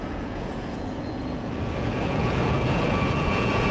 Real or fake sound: fake